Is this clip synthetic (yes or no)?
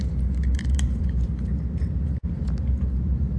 yes